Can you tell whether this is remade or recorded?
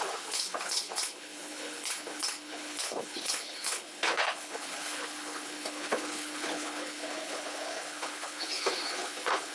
remade